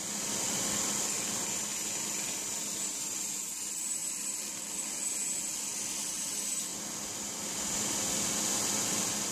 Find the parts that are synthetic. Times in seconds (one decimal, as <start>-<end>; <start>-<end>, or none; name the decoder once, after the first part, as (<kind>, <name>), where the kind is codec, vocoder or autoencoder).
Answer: none